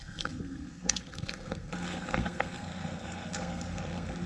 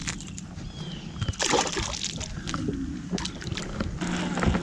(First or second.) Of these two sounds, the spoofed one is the first